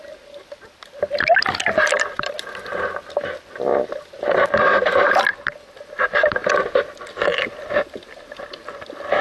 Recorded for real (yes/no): yes